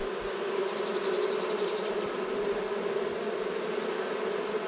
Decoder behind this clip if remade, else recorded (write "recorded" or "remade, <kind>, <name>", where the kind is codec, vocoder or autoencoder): recorded